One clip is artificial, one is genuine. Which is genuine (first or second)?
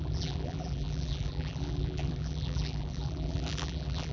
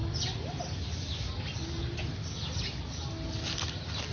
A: second